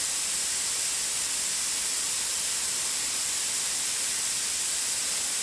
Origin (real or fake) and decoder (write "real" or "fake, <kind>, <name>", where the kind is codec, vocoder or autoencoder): real